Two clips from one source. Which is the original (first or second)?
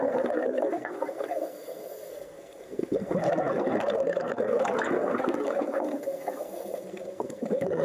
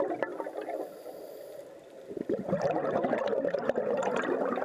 second